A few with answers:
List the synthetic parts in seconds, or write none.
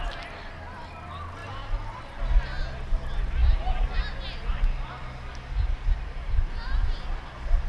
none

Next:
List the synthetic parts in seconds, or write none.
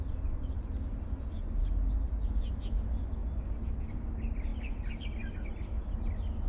none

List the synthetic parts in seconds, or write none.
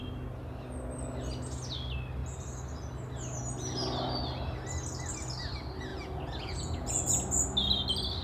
5.9-6.9 (vocoder, Vocos)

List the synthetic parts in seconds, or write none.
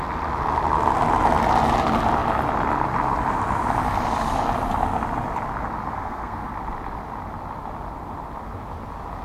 5.9-6.5 (codec, SNAC)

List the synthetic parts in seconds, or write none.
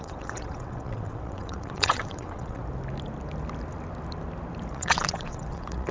0.0-2.6 (vocoder, WaveNeXt); 4.7-5.9